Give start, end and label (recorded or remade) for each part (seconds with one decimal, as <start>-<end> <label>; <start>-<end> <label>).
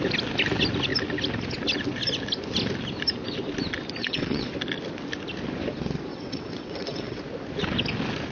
0.0-4.0 recorded; 4.0-4.5 remade; 4.5-6.1 recorded; 6.1-7.2 remade; 7.2-8.3 recorded